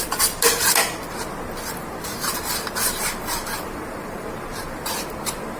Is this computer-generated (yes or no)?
no